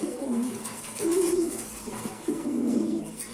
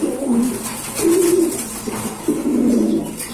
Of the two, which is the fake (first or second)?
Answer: first